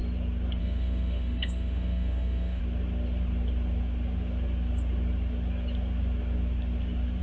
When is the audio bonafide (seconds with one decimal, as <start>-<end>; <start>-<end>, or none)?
0.0-0.6; 2.6-7.2